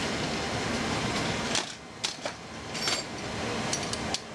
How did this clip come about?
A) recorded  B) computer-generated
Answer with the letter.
A